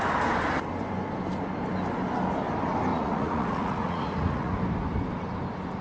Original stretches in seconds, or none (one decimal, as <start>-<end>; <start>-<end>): 0.0-2.9; 4.5-5.8